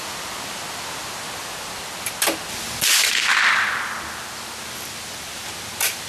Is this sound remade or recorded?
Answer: recorded